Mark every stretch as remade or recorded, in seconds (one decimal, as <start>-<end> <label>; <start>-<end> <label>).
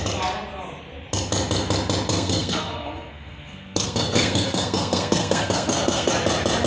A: 0.0-2.1 recorded; 2.1-6.1 remade; 6.1-6.7 recorded